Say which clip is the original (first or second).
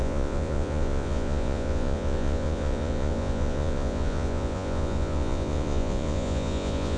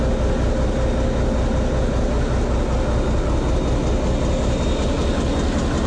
second